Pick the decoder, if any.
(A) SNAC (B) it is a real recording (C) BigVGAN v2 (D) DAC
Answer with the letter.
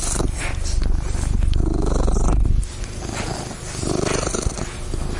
B